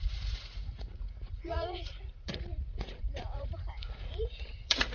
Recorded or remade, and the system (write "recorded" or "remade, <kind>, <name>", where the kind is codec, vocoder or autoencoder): remade, vocoder, Vocos